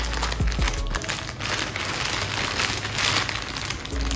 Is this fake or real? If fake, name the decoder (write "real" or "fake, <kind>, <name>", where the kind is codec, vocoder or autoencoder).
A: real